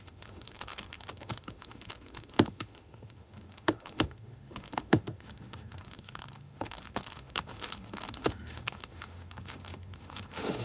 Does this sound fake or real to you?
fake